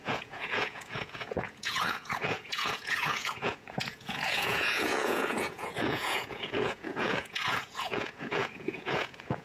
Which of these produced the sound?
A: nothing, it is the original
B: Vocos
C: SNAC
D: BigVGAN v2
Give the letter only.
B